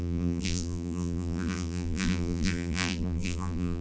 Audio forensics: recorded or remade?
remade